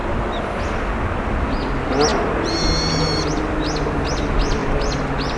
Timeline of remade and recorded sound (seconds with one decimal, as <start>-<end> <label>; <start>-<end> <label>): 0.0-4.6 recorded; 4.6-5.4 remade